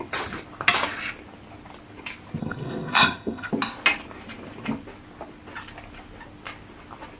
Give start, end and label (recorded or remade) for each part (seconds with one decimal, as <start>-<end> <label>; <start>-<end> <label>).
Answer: 0.0-2.4 recorded; 2.4-3.5 remade; 3.5-7.2 recorded